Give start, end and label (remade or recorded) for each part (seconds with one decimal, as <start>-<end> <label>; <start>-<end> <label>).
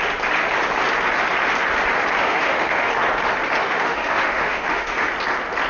0.0-2.2 recorded; 2.2-2.9 remade; 2.9-3.6 recorded; 3.6-5.1 remade; 5.1-5.7 recorded